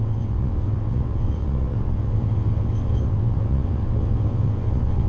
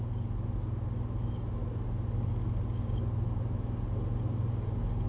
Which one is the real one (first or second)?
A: second